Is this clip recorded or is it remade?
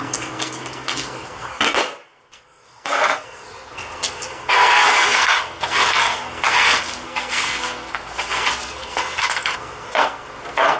remade